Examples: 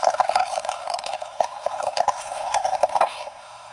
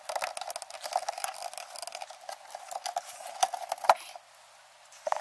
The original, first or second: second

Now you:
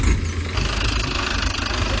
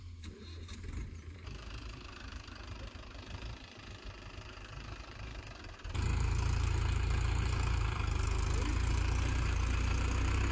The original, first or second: first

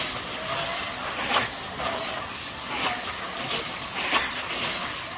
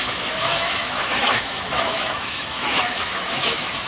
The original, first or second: first